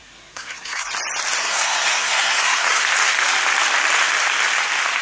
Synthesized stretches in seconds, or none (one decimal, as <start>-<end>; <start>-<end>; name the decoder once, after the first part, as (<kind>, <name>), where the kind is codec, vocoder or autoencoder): 0.0-0.9 (codec, SNAC); 1.4-2.8